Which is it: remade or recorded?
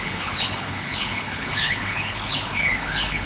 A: remade